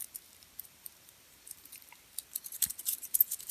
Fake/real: fake